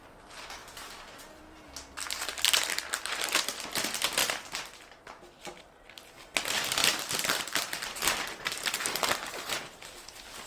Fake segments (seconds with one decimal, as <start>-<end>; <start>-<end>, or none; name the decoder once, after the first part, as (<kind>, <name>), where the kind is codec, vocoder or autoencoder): 6.8-8.4 (vocoder, BigVGAN v2)